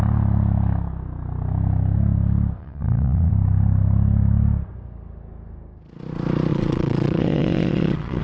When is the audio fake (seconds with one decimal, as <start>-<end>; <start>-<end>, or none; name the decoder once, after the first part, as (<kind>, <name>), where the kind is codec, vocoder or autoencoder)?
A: 2.6-3.3 (vocoder, Vocos); 6.5-8.2